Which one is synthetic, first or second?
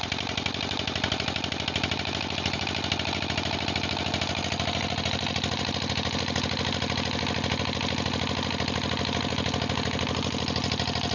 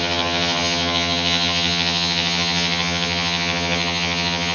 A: second